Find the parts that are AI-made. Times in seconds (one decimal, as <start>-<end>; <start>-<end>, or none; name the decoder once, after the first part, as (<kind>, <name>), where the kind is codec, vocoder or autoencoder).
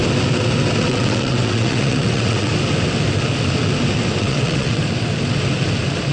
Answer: 0.8-2.5 (vocoder, WaveNeXt); 4.2-4.8